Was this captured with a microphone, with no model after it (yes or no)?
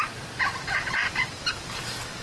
yes